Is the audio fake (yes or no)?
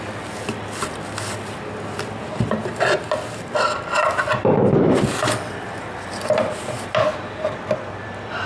no